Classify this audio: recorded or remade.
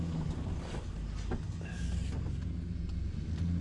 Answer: recorded